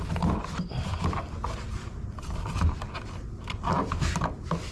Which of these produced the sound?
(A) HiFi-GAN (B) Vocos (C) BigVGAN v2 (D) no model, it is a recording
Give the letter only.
C